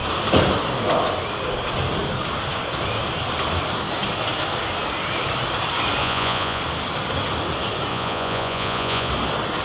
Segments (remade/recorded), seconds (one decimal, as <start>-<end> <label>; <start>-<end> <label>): 0.0-6.0 recorded; 6.0-6.6 remade; 6.6-7.9 recorded; 7.9-9.1 remade; 9.1-9.6 recorded

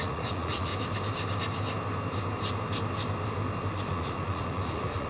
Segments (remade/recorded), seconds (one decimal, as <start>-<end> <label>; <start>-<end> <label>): 0.0-0.7 remade; 0.7-3.8 recorded; 3.8-5.1 remade